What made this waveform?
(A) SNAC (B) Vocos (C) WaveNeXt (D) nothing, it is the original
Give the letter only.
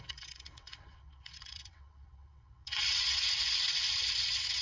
C